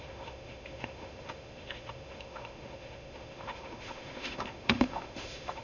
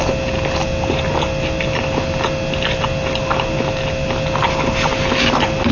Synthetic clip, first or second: first